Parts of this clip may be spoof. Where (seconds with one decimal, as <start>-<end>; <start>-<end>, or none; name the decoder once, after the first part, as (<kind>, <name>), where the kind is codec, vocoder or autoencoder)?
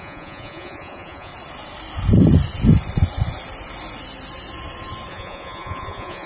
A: 0.0-1.3 (vocoder, Vocos); 5.1-6.3